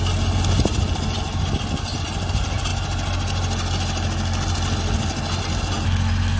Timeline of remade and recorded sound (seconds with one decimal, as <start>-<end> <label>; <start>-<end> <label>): 0.0-6.4 recorded